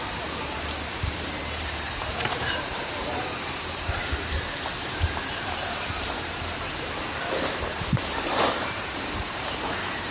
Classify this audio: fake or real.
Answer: fake